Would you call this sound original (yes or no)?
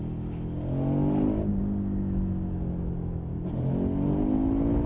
yes